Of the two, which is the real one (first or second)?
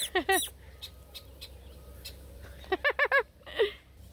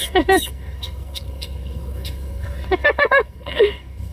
first